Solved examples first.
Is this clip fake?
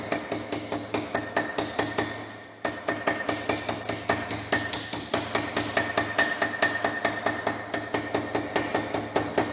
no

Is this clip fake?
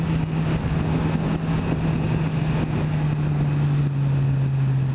no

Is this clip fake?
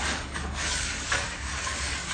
yes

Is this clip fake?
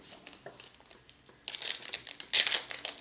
no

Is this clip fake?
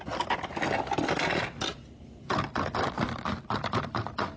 no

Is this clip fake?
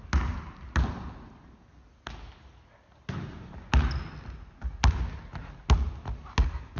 no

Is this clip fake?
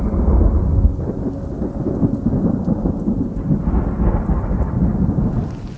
no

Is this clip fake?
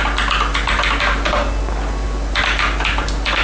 no